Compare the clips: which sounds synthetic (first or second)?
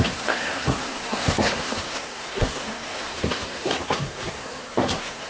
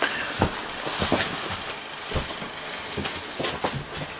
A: first